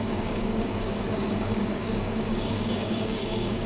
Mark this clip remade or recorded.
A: remade